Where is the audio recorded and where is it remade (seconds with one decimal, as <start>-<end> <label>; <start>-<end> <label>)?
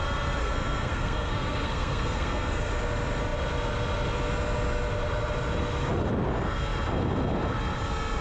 0.0-0.4 recorded; 0.4-2.7 remade; 2.7-8.2 recorded